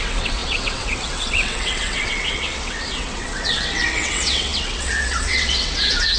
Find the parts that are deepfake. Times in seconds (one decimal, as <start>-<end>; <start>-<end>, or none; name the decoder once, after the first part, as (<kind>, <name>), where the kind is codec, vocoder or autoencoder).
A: 0.0-6.2 (vocoder, WaveNeXt)